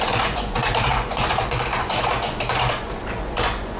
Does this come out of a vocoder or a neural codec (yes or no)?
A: yes